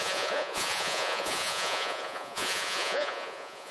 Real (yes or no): no